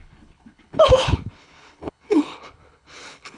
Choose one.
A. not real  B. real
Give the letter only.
A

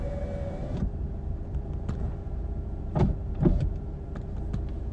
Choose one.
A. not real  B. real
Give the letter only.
A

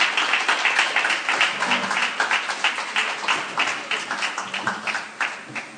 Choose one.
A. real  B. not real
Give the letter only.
A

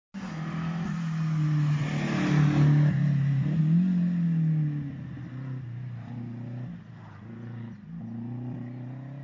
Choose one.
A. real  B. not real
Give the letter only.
A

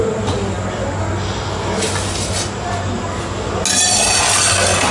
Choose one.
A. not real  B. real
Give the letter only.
B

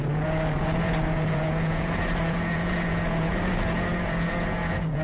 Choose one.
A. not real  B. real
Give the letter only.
A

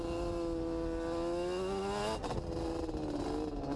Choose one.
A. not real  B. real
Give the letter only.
B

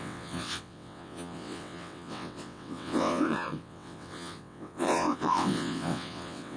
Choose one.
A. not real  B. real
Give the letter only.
A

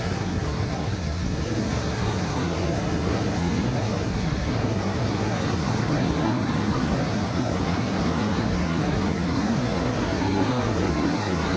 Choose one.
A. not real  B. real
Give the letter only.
A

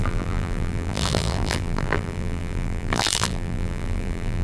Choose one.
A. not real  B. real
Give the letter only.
A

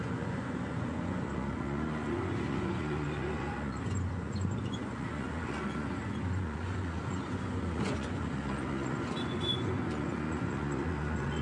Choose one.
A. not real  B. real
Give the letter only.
A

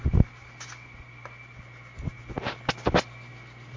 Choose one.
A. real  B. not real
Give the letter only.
A